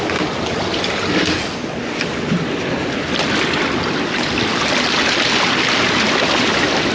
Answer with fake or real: real